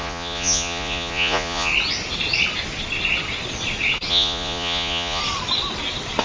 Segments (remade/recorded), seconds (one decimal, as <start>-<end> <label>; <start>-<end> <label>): 0.0-1.7 remade; 1.7-4.1 recorded; 4.1-5.2 remade; 5.2-6.2 recorded